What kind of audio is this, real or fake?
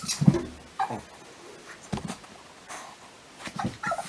real